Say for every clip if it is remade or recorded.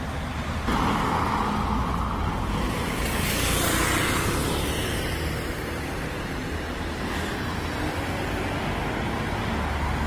recorded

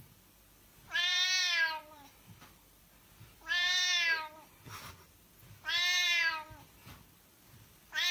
remade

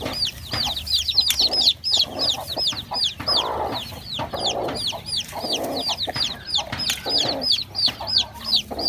recorded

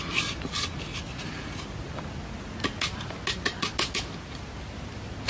recorded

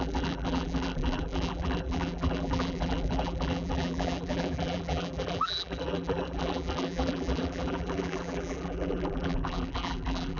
remade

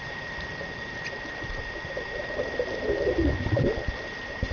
remade